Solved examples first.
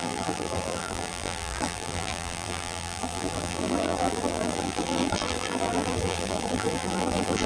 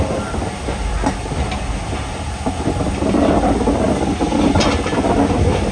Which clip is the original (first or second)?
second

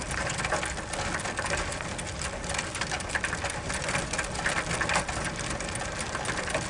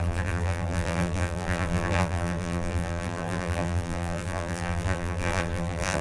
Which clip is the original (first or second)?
first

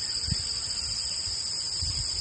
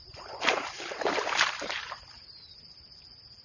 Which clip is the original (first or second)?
first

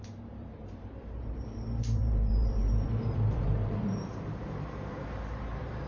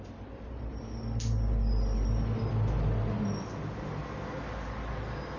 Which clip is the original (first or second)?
second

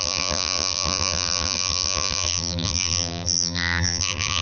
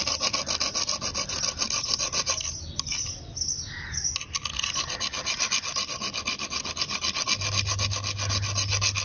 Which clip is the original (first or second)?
second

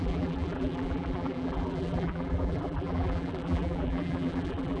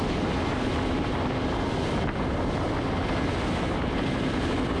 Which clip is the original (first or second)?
second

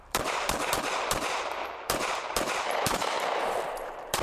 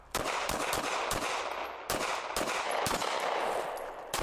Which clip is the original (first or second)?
second